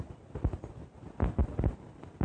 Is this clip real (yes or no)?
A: yes